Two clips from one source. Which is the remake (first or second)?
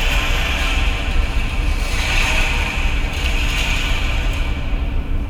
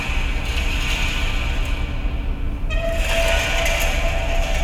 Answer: first